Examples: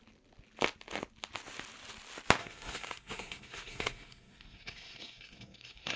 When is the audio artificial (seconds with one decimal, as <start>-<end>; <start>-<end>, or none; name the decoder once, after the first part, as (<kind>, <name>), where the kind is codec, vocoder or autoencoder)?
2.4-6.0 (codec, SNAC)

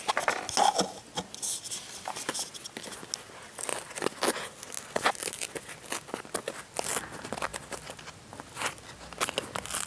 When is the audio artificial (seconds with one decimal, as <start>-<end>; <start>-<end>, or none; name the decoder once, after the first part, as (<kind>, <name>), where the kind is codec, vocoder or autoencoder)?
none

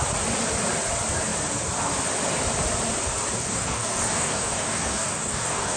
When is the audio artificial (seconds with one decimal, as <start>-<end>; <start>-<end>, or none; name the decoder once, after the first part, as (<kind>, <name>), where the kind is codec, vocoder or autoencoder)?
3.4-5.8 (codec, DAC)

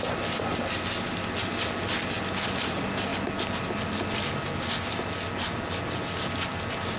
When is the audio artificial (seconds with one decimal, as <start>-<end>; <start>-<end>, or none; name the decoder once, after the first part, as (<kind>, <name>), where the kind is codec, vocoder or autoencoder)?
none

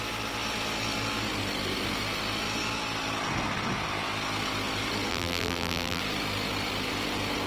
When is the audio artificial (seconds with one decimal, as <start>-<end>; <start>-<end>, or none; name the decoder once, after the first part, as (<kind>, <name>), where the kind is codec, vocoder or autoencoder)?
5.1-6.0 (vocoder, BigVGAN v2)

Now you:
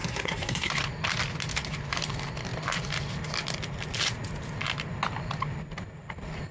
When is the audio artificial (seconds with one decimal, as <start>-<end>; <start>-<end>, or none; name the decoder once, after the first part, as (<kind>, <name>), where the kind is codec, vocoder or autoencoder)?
0.0-0.7 (codec, SNAC)

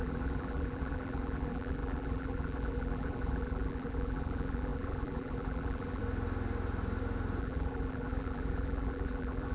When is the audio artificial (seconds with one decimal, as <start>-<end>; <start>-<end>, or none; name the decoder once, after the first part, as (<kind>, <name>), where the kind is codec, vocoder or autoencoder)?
0.0-6.0 (vocoder, BigVGAN v2); 7.4-9.5

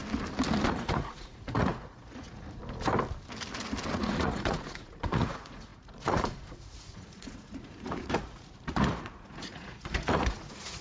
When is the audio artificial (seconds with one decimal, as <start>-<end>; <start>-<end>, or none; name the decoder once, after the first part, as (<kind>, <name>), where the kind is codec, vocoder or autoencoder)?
0.7-2.6 (vocoder, Vocos); 3.9-10.8